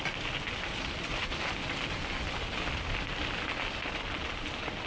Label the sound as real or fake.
real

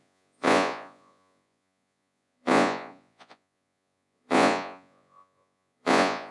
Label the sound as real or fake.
fake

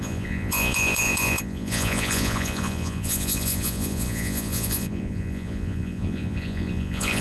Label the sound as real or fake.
fake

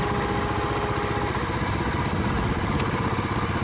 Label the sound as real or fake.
real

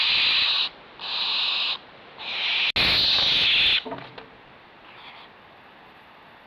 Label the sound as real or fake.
real